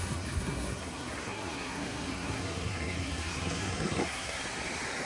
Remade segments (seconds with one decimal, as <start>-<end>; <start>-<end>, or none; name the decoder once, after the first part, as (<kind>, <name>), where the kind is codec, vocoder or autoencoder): 0.0-4.4 (codec, SNAC)